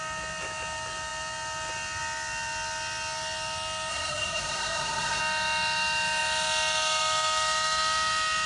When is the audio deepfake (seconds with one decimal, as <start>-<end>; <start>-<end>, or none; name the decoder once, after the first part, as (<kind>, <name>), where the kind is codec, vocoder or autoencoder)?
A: 3.9-5.2 (codec, SNAC)